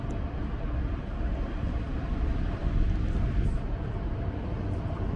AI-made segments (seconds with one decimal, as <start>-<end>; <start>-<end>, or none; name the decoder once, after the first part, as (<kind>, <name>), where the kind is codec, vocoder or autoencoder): none